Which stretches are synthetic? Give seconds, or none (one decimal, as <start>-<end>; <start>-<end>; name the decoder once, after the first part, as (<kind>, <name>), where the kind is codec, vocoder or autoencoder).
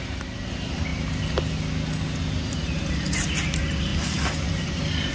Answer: none